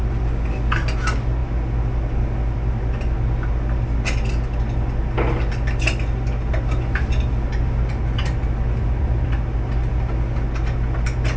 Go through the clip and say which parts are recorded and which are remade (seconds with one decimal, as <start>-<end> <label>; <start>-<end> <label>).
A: 0.0-11.4 recorded